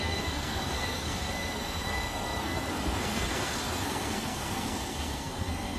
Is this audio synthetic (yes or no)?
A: yes